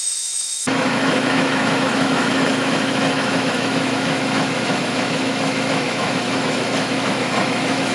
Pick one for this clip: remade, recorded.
remade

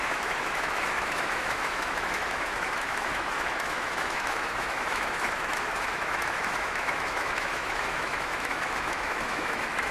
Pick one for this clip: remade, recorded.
remade